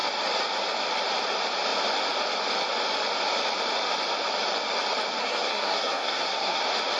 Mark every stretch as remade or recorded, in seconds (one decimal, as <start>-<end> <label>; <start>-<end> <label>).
0.0-5.2 recorded; 5.2-6.6 remade; 6.6-7.0 recorded